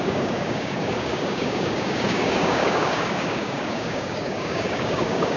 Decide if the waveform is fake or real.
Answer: fake